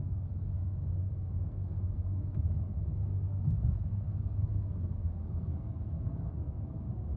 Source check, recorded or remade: remade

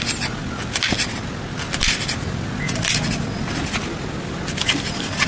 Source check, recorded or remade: recorded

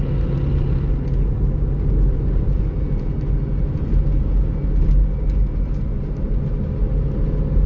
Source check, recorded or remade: recorded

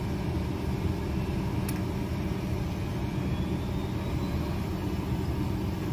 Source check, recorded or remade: recorded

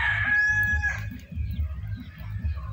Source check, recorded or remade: recorded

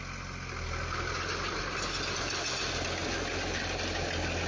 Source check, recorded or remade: recorded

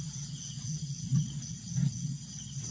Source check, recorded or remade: remade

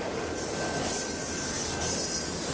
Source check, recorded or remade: recorded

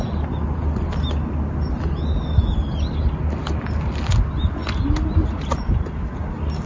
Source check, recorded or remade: recorded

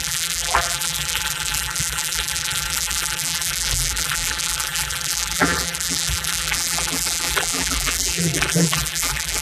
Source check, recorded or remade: remade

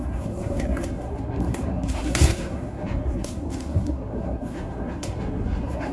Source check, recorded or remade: remade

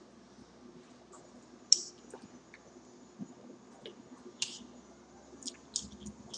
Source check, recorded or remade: recorded